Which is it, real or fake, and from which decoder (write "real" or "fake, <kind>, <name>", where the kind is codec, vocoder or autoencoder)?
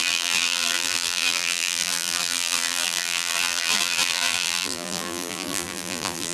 fake, vocoder, BigVGAN v2